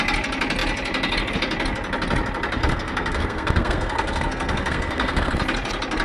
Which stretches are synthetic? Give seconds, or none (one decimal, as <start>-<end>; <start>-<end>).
2.6-5.3

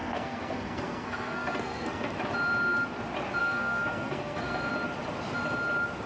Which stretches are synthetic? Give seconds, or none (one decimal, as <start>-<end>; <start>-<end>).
0.0-2.1; 3.4-4.7

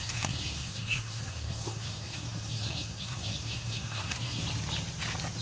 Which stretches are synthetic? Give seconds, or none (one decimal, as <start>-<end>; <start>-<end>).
0.0-4.4

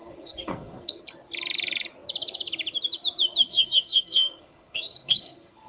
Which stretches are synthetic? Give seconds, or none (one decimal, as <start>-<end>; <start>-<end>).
0.0-1.0; 3.5-5.7

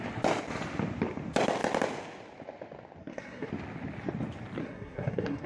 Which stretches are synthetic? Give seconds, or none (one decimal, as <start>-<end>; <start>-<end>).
3.0-3.5; 4.6-5.5

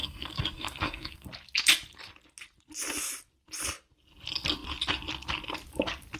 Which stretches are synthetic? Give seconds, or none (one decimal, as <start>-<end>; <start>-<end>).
0.0-1.3

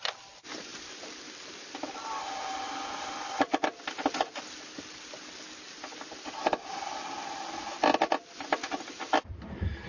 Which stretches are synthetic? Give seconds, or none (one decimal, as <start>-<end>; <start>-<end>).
none